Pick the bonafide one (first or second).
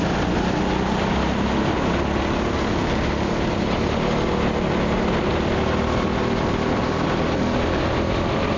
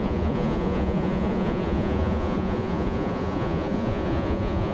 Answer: first